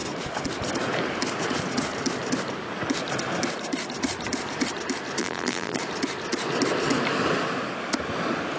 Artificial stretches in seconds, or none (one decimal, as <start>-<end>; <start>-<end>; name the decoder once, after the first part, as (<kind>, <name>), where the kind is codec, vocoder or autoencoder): 5.2-5.8 (vocoder, BigVGAN v2)